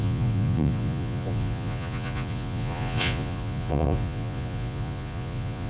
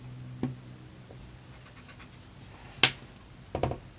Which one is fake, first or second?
first